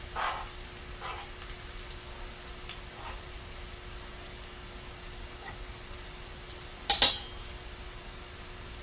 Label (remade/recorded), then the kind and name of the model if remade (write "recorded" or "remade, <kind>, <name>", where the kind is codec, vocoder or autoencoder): recorded